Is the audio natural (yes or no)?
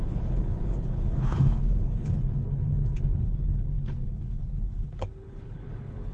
no